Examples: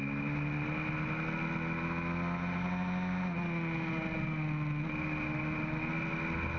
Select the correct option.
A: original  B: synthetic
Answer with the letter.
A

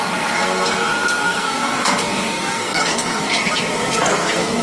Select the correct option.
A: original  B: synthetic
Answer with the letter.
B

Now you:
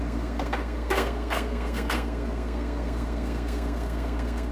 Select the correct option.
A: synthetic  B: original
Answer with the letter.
A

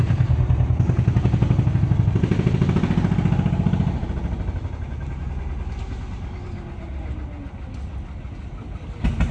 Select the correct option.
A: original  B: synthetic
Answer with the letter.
A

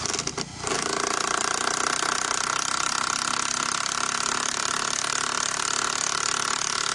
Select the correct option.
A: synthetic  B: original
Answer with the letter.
B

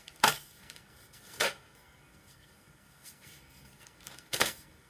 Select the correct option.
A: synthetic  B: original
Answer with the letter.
A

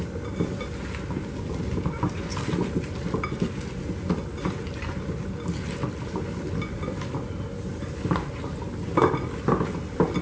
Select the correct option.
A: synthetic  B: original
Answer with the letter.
B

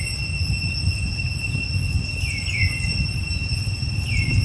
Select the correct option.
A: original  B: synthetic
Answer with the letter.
A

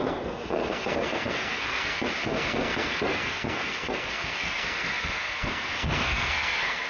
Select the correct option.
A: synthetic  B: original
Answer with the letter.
A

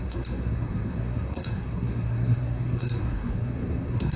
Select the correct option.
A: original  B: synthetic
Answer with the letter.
B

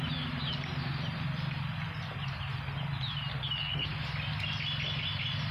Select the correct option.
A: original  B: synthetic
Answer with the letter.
A